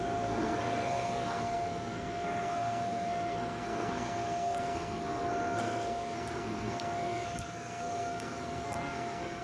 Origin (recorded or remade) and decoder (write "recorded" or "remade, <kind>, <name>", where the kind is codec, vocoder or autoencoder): remade, codec, SNAC